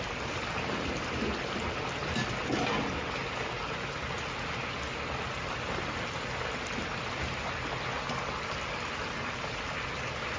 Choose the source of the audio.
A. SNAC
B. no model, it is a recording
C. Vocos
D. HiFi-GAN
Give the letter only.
B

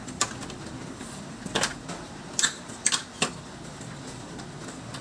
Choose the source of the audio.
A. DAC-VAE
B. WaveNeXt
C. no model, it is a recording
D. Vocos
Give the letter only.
C